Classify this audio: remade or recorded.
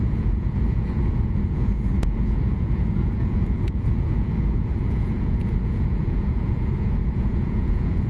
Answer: remade